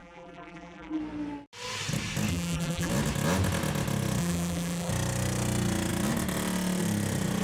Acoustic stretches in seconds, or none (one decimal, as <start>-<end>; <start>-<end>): 1.0-2.3; 2.9-4.2; 4.9-7.4